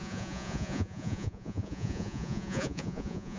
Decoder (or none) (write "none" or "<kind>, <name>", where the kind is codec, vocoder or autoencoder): vocoder, Vocos